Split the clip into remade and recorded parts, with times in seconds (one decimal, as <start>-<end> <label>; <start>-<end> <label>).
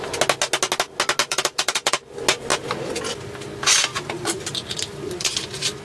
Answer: 0.0-1.2 recorded; 1.2-1.9 remade; 1.9-2.5 recorded; 2.5-3.0 remade; 3.0-3.9 recorded; 3.9-5.1 remade; 5.1-5.8 recorded